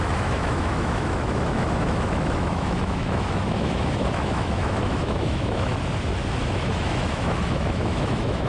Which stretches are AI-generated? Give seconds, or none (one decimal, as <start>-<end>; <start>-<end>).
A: 0.0-5.7; 6.4-8.5